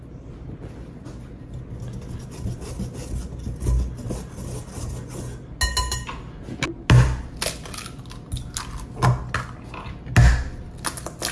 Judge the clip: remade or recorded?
recorded